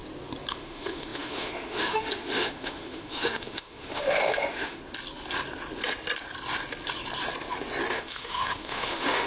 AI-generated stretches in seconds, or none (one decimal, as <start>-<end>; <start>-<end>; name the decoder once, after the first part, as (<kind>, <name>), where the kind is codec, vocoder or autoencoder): 0.5-4.8 (autoencoder, DAC-VAE); 7.9-9.3